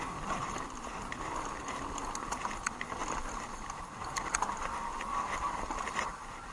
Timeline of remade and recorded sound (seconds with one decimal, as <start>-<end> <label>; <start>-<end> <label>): 0.0-6.5 recorded